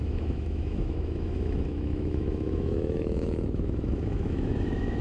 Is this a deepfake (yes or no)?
yes